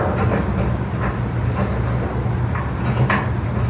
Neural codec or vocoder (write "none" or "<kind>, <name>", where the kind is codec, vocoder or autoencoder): none